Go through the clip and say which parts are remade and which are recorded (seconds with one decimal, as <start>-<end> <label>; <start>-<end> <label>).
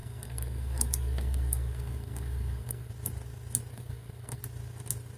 0.0-2.9 remade; 2.9-3.7 recorded; 3.7-4.4 remade; 4.4-5.2 recorded